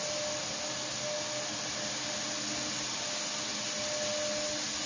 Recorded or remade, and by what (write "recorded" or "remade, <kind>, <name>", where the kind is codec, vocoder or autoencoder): recorded